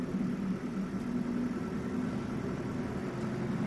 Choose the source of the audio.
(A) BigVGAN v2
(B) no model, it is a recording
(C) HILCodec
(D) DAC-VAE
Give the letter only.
B